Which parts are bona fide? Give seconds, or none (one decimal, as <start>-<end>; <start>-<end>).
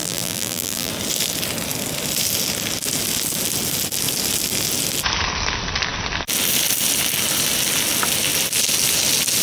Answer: 0.9-9.4